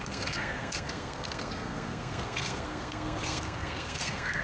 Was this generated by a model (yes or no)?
yes